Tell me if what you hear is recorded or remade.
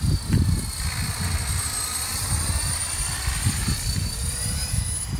recorded